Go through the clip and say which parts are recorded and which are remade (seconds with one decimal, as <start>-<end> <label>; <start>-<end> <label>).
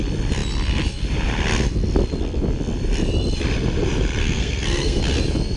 0.0-4.2 recorded; 4.2-5.0 remade; 5.0-5.6 recorded